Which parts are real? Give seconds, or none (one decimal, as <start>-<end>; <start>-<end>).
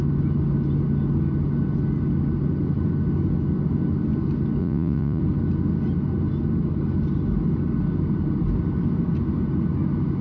0.0-4.6; 5.2-10.2